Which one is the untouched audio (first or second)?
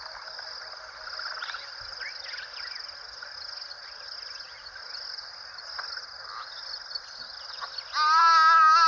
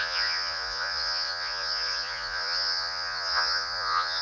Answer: first